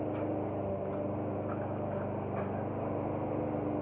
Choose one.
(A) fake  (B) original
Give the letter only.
B